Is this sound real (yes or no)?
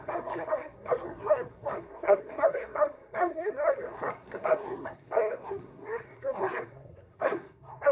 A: no